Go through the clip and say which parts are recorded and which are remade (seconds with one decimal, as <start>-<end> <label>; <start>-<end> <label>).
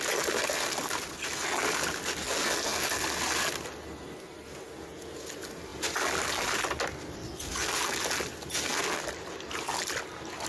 0.0-10.5 recorded